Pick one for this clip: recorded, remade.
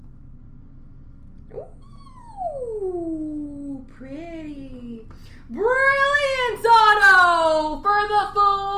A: recorded